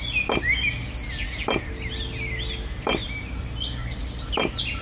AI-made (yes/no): no